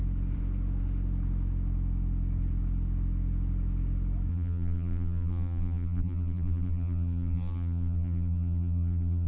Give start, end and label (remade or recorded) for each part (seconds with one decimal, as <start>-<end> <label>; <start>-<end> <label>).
0.0-4.3 recorded; 4.3-9.3 remade

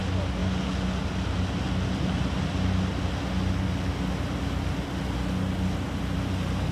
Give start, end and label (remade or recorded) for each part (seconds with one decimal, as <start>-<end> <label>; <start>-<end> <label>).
0.0-6.7 recorded

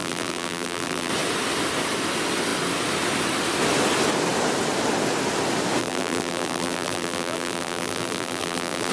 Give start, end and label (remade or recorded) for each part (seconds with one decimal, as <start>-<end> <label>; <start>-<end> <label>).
0.0-1.1 remade; 1.1-5.8 recorded; 5.8-8.9 remade